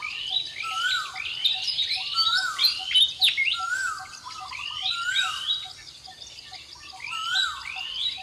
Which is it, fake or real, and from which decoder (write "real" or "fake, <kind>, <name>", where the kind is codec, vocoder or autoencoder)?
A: real